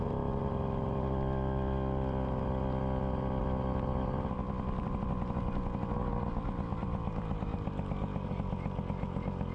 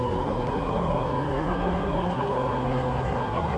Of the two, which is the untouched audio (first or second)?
first